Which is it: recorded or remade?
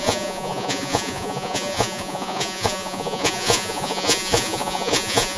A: remade